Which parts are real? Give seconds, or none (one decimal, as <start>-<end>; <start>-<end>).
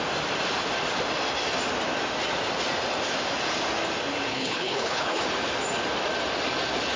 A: 0.0-4.3; 5.2-7.0